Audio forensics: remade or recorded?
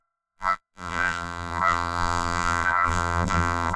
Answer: remade